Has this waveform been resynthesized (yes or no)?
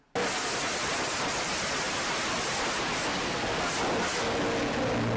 no